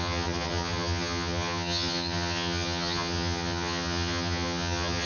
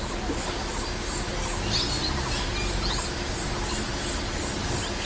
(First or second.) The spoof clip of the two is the first